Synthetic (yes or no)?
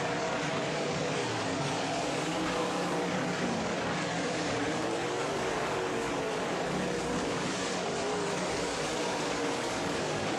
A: yes